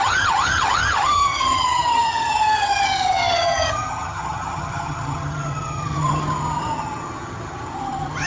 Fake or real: fake